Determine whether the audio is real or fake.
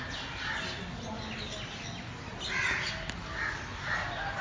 real